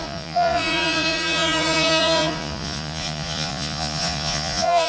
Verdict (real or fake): fake